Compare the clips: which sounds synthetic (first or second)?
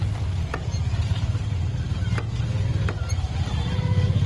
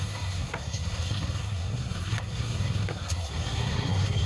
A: second